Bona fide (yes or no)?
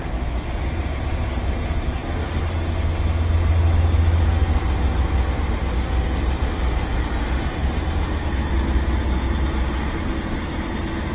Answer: yes